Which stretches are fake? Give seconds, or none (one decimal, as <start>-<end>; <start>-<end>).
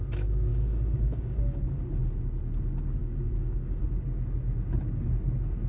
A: 0.5-1.6; 3.0-3.8